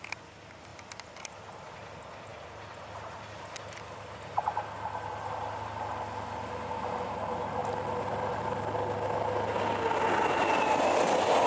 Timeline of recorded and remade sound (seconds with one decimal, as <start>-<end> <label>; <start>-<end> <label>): 0.0-11.5 recorded